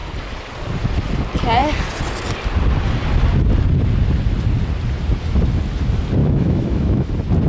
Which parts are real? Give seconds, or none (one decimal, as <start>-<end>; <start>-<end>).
0.0-6.2; 7.1-7.5